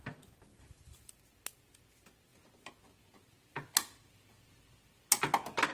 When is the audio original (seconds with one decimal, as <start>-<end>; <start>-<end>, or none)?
0.0-0.5; 1.2-5.7